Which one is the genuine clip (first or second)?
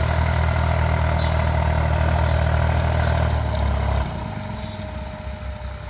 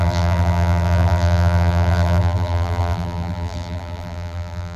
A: first